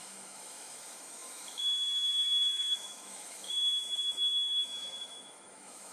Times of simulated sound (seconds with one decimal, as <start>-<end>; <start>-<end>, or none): 0.0-5.9